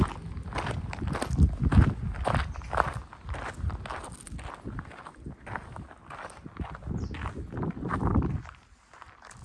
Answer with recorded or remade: recorded